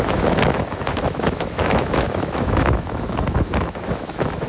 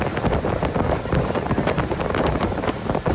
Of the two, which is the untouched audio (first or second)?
second